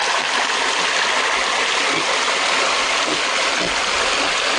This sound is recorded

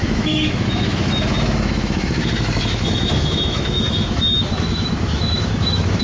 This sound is remade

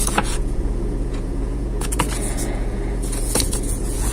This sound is remade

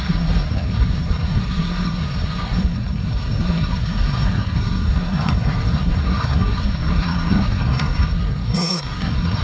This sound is remade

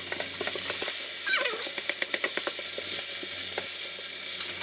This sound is recorded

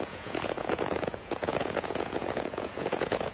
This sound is remade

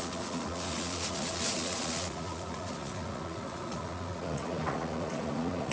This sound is remade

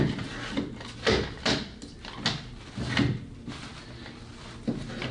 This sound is recorded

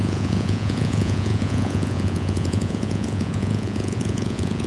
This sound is remade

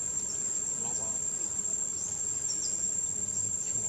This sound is recorded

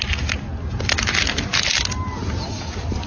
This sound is recorded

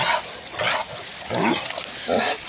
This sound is recorded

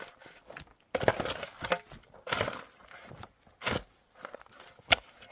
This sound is recorded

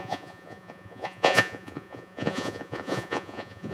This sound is remade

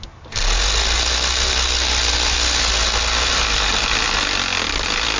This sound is recorded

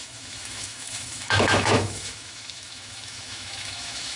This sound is remade